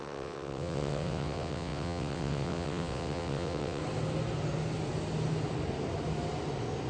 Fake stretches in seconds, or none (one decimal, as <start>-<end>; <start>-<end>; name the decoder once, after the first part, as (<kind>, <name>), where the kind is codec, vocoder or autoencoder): 0.0-3.8 (vocoder, WaveNeXt)